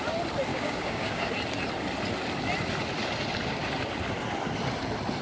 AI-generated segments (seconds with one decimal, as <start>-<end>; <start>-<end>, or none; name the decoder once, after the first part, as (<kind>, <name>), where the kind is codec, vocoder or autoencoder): 0.5-1.3 (codec, DAC)